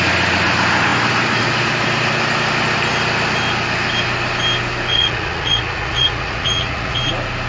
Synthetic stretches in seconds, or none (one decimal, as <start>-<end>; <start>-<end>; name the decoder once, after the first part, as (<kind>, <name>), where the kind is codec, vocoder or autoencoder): 4.9-7.0 (vocoder, Vocos)